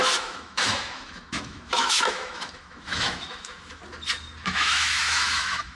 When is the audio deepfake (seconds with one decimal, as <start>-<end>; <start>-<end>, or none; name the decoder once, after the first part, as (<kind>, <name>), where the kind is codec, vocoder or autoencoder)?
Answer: 0.0-3.8 (autoencoder, DAC-VAE); 4.4-5.7